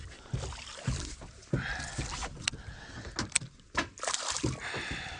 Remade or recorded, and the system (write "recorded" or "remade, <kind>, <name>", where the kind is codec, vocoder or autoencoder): recorded